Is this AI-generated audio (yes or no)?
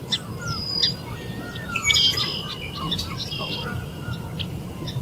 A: no